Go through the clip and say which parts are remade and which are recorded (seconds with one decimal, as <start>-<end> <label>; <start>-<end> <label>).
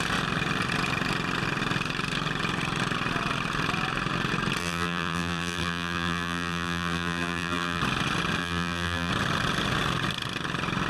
0.0-4.6 recorded; 4.6-7.8 remade; 7.8-8.4 recorded; 8.4-9.1 remade; 9.1-10.9 recorded